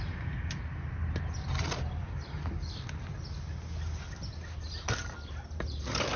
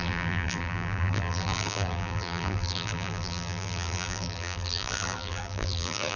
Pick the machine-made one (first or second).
second